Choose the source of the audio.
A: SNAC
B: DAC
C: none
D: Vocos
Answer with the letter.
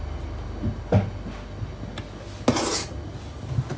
C